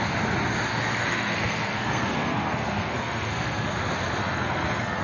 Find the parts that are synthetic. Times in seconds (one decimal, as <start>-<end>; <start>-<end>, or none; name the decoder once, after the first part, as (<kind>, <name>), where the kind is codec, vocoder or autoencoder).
0.7-3.7 (codec, SNAC); 4.2-5.0